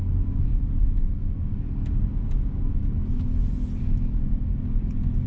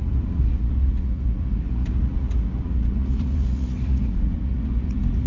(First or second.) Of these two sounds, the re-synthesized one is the second